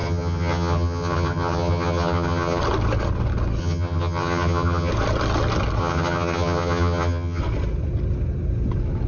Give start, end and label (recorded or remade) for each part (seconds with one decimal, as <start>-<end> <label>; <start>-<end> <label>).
0.0-2.6 remade; 2.6-3.6 recorded; 3.6-4.9 remade; 4.9-5.8 recorded; 5.8-7.4 remade; 7.4-9.1 recorded